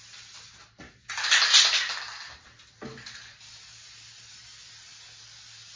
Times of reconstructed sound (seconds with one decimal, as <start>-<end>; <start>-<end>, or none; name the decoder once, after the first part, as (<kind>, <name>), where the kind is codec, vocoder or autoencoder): none